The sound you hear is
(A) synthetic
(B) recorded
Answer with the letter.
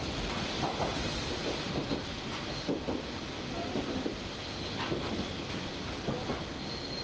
B